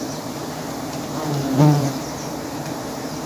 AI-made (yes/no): yes